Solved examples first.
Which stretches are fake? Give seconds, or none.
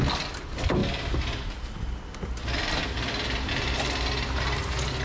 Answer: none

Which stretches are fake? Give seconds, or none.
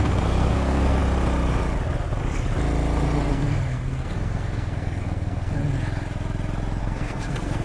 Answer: 0.0-1.0 (codec, SNAC); 3.3-5.6; 6.8-7.6